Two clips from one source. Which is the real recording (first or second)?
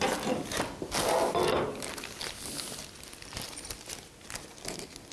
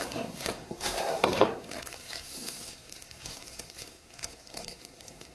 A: first